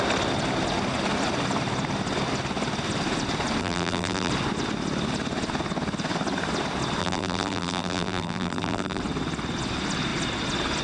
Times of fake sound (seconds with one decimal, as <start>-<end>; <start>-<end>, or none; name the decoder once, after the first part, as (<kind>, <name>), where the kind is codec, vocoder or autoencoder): 3.6-4.3 (vocoder, BigVGAN v2); 7.0-9.0